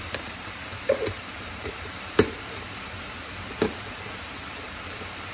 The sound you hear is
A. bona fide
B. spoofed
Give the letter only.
B